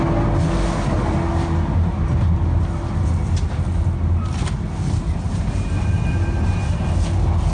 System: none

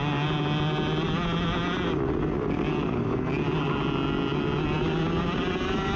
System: none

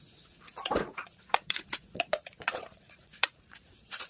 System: vocoder, Vocos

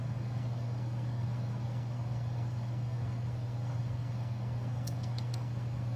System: codec, SNAC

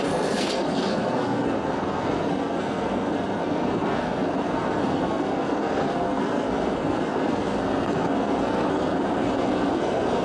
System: codec, SNAC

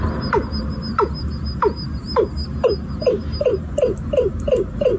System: none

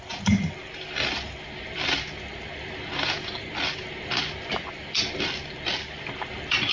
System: none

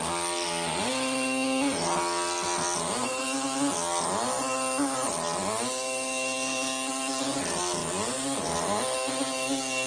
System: none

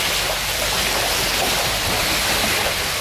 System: none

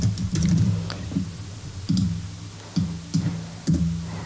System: none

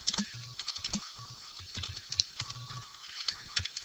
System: none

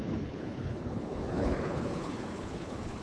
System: codec, HILCodec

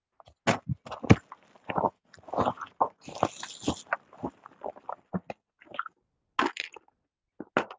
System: none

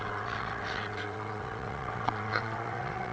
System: vocoder, WaveNeXt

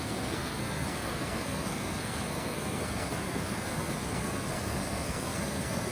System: codec, SNAC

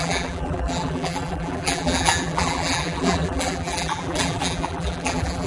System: vocoder, BigVGAN v2